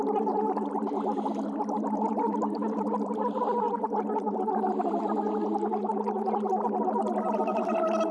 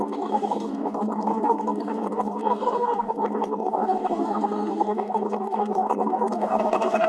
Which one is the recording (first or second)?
first